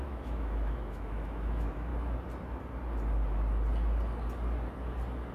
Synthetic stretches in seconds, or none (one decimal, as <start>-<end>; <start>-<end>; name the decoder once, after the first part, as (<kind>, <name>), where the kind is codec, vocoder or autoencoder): 0.0-1.9 (autoencoder, DAC-VAE)